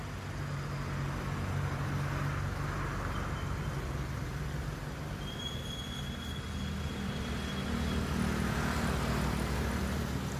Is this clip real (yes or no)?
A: yes